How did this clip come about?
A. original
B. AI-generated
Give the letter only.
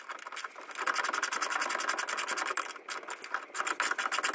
A